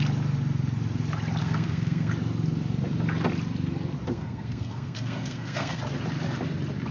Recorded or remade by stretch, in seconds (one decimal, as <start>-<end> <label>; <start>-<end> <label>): 0.0-1.4 recorded; 1.4-2.1 remade; 2.1-4.1 recorded; 4.1-5.8 remade; 5.8-6.9 recorded